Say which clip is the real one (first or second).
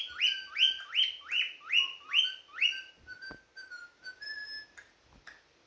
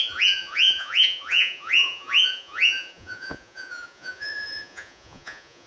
first